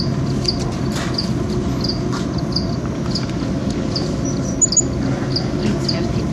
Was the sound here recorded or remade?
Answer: recorded